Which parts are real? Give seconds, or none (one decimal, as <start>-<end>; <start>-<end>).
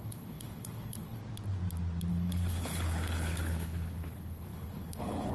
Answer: 1.2-2.1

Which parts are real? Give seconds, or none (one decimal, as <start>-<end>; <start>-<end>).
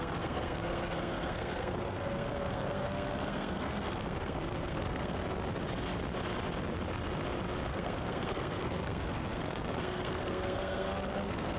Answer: 5.2-7.7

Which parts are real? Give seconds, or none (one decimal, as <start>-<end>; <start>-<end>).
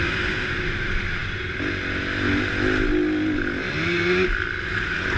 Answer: 0.0-5.2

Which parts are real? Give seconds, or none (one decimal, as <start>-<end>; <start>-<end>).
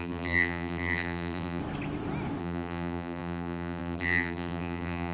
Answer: 1.6-2.4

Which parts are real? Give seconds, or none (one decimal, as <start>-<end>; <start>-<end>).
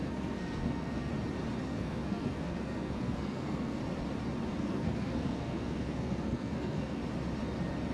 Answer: 1.1-1.6; 3.8-4.6; 7.0-7.9